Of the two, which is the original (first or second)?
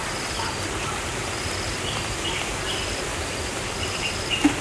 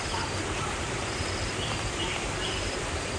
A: first